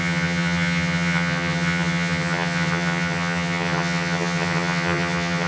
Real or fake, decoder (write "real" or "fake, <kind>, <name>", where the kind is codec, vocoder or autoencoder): fake, vocoder, HiFi-GAN